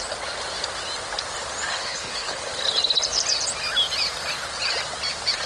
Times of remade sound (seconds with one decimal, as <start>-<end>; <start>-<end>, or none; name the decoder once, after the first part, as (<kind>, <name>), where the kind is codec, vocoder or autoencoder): 1.7-2.5 (codec, HILCodec)